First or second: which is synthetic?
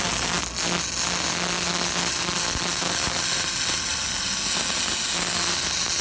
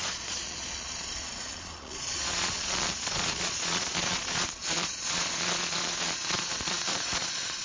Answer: second